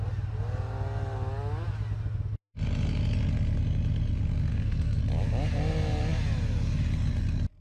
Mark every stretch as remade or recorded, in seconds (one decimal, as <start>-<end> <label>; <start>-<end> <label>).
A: 0.0-4.5 recorded; 4.5-5.0 remade; 5.0-7.6 recorded